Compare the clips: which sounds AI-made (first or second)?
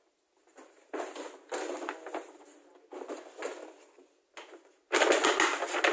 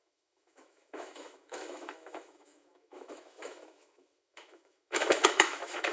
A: second